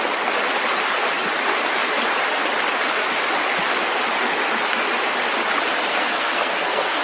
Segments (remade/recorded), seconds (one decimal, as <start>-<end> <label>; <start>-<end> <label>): 0.0-5.9 recorded; 5.9-7.0 remade